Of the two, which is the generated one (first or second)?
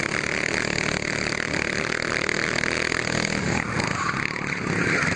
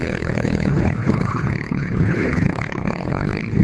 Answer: second